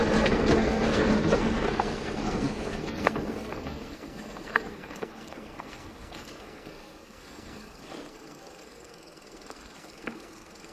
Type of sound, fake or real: fake